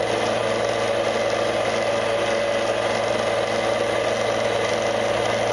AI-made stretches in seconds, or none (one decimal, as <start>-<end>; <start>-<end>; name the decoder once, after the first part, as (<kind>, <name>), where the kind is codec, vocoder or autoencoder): none